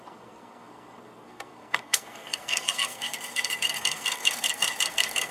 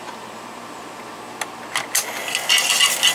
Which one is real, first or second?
second